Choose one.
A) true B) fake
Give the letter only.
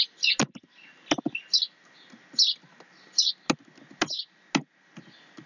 A